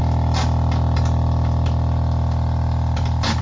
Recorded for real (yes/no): yes